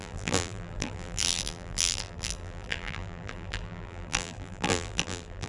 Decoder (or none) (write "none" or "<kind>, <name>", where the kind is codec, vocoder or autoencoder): vocoder, BigVGAN v2